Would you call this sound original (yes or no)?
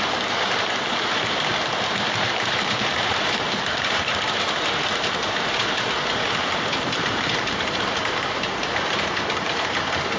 no